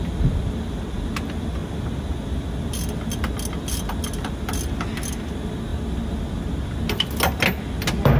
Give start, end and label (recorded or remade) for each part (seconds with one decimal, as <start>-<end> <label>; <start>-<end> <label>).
0.0-8.2 recorded